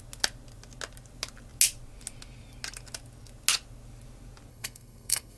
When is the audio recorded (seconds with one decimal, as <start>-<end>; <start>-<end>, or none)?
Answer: 0.0-4.5